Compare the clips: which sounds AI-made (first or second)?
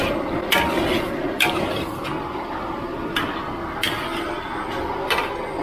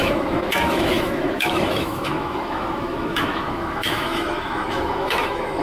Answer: second